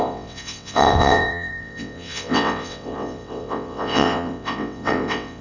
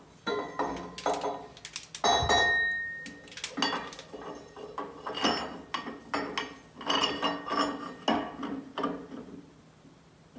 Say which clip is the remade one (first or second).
first